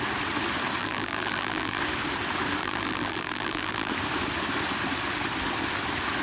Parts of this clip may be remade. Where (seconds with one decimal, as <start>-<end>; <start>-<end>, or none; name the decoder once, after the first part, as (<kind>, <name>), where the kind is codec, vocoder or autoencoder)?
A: 0.8-1.8 (vocoder, BigVGAN v2); 2.6-3.9

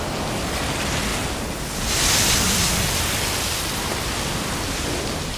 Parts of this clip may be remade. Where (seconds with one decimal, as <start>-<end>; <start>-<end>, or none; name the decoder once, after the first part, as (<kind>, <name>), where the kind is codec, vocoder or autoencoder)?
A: none